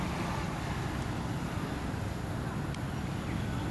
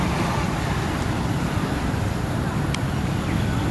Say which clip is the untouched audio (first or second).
first